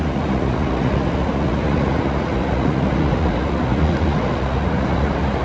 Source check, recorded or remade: remade